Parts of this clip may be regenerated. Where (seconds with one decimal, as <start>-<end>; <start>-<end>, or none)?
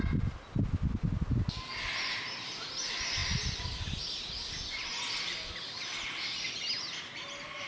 none